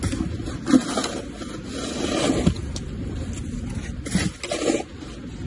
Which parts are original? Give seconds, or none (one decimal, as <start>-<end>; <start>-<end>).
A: 0.0-5.5

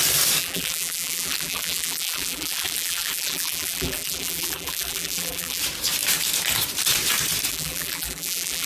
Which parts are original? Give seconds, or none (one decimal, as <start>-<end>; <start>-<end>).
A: 0.0-0.4; 5.6-7.5

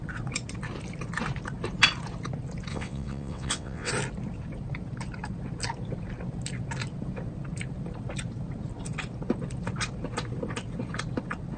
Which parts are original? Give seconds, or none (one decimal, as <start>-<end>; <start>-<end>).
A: 0.0-2.7; 3.9-11.6

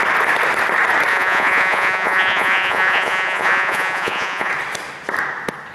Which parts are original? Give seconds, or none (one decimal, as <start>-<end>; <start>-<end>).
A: 0.0-1.1; 4.5-5.7

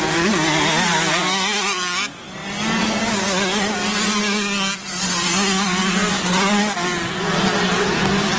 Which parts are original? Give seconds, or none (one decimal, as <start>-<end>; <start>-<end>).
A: 0.0-8.4

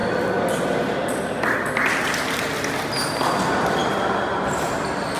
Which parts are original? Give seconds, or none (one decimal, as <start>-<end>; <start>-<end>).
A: 0.0-3.8; 4.7-5.2